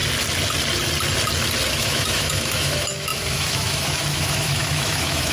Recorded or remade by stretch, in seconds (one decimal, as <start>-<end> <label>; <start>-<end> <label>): 0.0-1.7 recorded; 1.7-5.3 remade